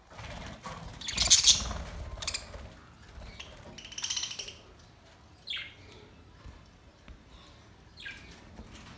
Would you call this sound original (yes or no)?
yes